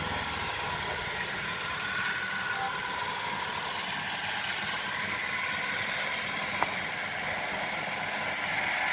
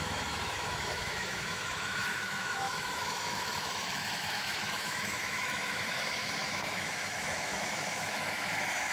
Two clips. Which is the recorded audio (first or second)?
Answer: first